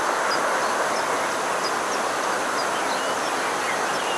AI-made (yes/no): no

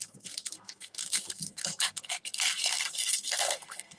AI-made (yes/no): yes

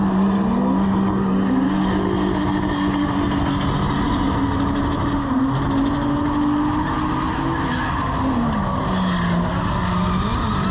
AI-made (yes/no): no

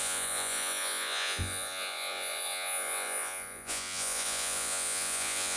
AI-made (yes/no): yes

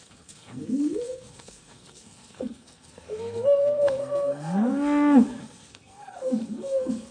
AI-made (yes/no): yes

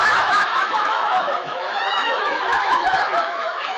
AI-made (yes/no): yes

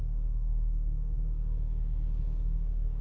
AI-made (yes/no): yes